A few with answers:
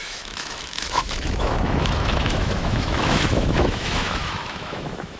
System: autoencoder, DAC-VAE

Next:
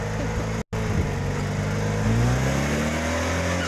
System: none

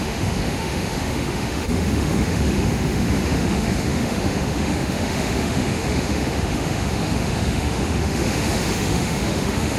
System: autoencoder, DAC-VAE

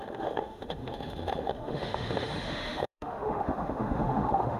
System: autoencoder, DAC-VAE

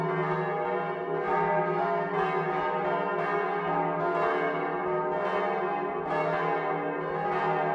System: none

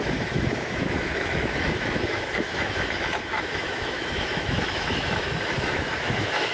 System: autoencoder, DAC-VAE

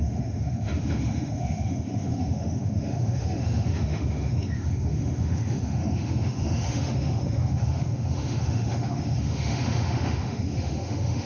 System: autoencoder, DAC-VAE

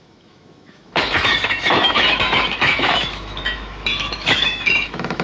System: autoencoder, DAC-VAE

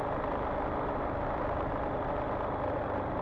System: none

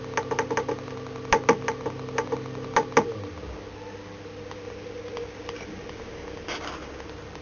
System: none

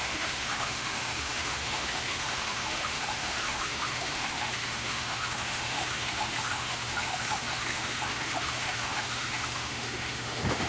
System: autoencoder, DAC-VAE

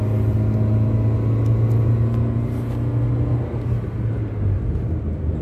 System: none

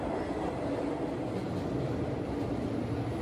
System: none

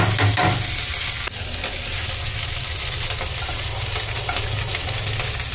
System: none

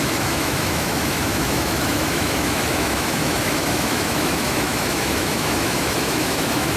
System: autoencoder, DAC-VAE